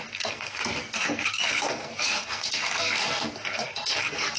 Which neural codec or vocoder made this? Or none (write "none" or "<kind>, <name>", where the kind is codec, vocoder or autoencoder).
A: codec, SNAC